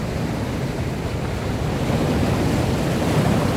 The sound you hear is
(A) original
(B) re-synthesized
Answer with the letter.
A